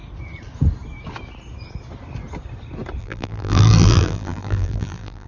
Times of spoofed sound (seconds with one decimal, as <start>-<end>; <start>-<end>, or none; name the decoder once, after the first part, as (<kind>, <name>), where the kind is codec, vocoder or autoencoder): 3.0-5.3 (vocoder, BigVGAN v2)